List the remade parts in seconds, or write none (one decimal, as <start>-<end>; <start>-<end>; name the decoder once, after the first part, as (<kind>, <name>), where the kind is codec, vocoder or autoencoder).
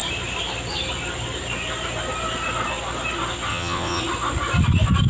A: 3.5-4.0 (vocoder, WaveNeXt)